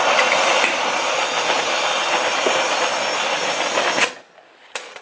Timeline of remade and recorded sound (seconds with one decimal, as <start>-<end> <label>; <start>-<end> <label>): 0.0-5.0 recorded